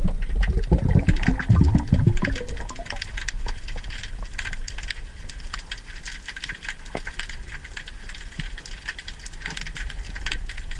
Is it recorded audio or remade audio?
recorded